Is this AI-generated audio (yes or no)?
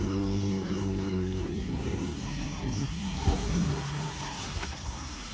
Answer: yes